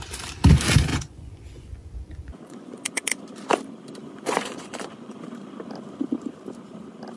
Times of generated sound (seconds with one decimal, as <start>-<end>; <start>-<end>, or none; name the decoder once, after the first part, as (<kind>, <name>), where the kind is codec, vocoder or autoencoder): 0.9-3.2 (vocoder, Vocos); 4.0-5.2